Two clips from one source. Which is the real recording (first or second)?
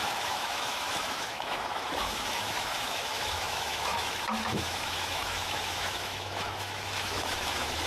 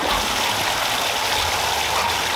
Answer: second